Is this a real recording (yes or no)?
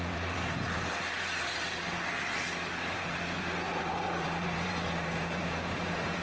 no